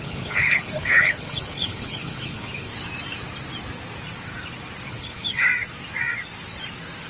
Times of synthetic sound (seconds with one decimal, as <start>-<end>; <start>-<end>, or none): 0.0-2.7; 4.9-5.5